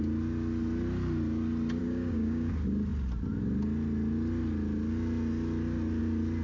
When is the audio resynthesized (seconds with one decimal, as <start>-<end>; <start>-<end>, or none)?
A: 1.8-2.5